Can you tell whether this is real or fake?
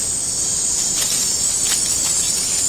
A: real